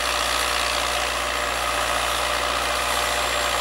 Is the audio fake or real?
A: real